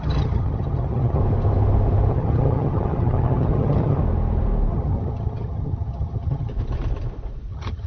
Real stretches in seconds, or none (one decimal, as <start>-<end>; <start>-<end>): 1.2-2.1; 4.0-4.7; 6.5-7.5